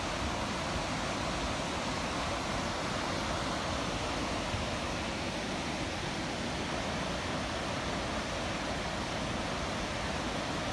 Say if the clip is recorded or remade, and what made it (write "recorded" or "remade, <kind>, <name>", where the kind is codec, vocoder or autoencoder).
recorded